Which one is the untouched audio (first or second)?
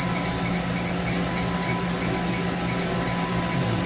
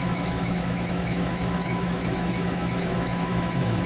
first